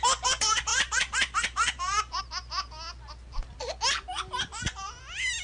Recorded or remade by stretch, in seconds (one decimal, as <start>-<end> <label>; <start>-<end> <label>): 0.0-0.7 recorded; 0.7-2.2 remade; 2.2-4.1 recorded; 4.1-5.0 remade; 5.0-5.4 recorded